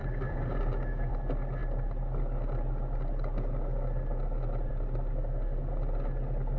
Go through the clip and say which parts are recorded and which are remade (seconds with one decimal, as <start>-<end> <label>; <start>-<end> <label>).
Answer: 0.0-1.1 remade; 1.1-6.6 recorded

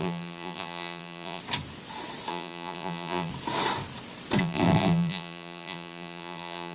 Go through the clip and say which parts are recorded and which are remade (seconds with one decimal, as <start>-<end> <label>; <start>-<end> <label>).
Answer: 0.0-1.4 remade; 1.4-2.3 recorded; 2.3-3.3 remade; 3.3-4.4 recorded; 4.4-6.7 remade

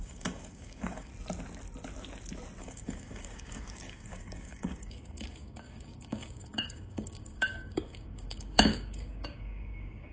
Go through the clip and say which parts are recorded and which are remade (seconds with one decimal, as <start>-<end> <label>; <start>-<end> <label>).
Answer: 0.0-1.1 remade; 1.1-2.6 recorded; 2.6-10.1 remade